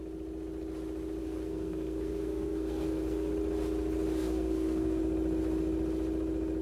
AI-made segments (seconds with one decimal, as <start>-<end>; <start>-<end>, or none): 1.2-3.3; 4.2-5.0

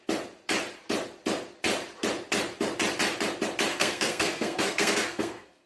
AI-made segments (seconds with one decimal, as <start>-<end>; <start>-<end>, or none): 3.7-5.7

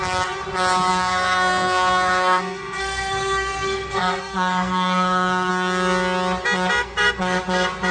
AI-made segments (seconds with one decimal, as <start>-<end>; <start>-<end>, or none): 0.9-5.5; 6.8-7.4

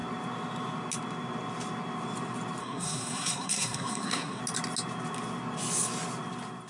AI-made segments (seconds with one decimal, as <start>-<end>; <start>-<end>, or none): 2.6-4.4

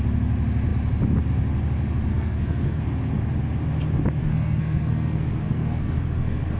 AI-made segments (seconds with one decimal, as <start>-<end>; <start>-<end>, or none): 2.1-2.8; 4.2-6.6